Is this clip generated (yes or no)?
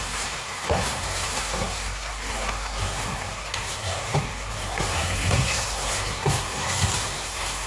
yes